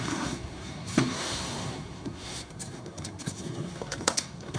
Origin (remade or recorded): remade